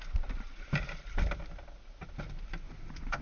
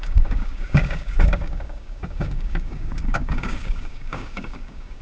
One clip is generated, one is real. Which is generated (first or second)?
second